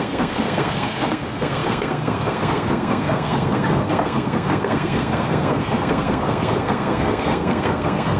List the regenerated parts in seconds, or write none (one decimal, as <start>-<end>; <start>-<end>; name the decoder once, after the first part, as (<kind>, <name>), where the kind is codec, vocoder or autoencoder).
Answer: 0.0-8.2 (codec, SNAC)